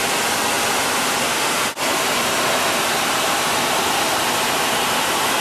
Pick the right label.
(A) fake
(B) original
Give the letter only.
B